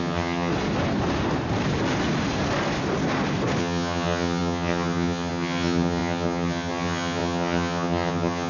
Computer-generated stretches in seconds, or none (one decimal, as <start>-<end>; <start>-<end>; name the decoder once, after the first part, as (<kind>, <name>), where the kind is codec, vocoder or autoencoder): 0.0-0.5 (vocoder, HiFi-GAN); 3.6-8.5